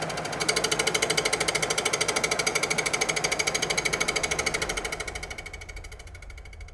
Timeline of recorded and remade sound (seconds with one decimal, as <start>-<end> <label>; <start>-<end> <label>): 0.0-6.7 recorded